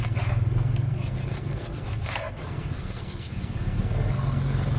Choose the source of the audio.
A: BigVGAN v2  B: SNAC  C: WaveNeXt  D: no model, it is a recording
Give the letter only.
B